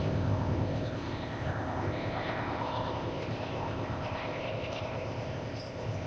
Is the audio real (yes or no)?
no